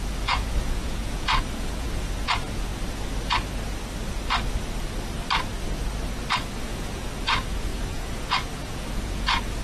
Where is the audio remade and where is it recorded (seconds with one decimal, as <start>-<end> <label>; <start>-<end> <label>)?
0.0-2.7 remade; 2.7-6.5 recorded; 6.5-9.6 remade